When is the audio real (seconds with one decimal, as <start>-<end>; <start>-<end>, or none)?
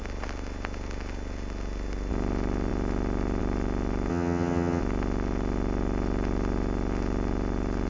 0.0-4.1; 4.8-7.9